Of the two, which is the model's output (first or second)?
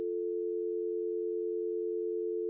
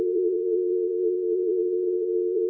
second